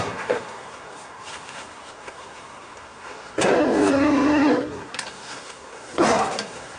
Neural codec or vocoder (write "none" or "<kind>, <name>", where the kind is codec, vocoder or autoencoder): codec, SNAC